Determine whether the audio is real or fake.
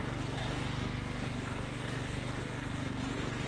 fake